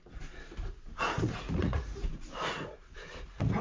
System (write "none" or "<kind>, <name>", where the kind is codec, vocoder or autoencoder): vocoder, Vocos